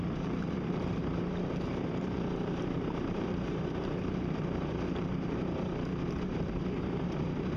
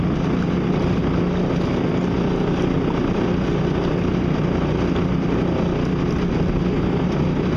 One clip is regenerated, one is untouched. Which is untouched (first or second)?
second